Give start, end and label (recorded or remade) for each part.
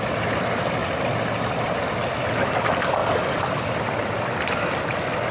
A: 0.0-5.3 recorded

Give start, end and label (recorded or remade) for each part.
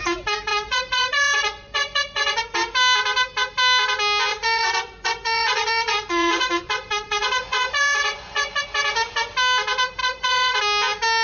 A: 0.0-0.5 recorded; 0.5-2.4 remade; 2.4-4.3 recorded; 4.3-8.6 remade; 8.6-10.0 recorded; 10.0-10.6 remade; 10.6-11.2 recorded